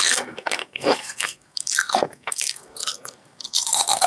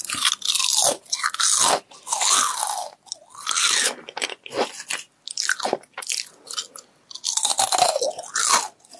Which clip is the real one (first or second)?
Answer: second